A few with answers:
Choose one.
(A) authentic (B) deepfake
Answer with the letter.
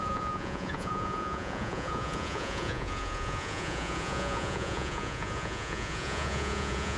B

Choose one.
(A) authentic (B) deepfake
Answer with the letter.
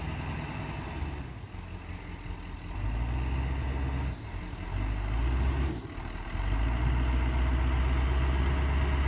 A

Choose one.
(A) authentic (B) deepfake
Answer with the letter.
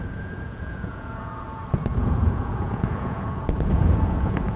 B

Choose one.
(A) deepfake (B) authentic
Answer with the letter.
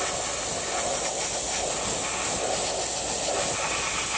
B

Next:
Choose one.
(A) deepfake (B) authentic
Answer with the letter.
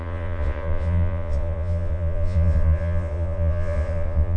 A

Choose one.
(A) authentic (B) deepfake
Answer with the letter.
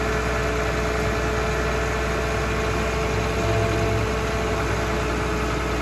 A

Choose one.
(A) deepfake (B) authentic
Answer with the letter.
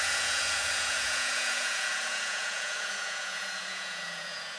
A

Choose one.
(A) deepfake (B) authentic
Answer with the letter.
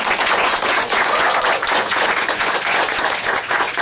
A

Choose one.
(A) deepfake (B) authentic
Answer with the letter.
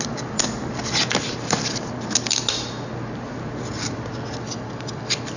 B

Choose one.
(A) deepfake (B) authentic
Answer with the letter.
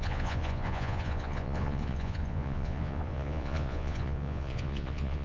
A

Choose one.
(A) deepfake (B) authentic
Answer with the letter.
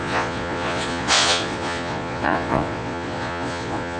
A